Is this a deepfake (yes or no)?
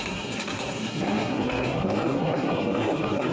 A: yes